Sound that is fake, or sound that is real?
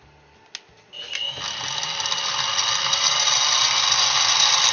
real